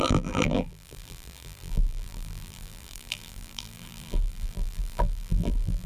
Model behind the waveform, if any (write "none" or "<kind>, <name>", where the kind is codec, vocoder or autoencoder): vocoder, BigVGAN v2